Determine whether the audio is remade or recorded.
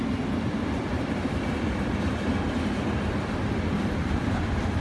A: remade